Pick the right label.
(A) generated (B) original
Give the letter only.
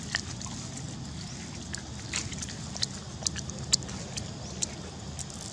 B